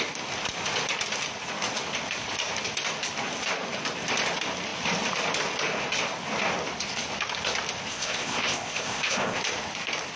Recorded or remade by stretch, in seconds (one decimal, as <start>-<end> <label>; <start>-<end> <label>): 0.0-7.9 recorded; 7.9-9.4 remade; 9.4-10.2 recorded